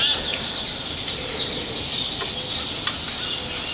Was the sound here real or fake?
real